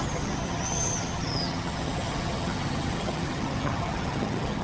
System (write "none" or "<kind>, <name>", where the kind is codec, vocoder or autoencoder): vocoder, HiFi-GAN